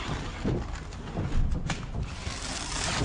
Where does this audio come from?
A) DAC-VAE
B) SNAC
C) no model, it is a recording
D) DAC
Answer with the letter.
C